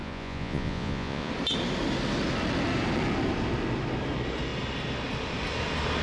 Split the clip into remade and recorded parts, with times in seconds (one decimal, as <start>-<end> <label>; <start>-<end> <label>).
0.0-1.3 remade; 1.3-6.0 recorded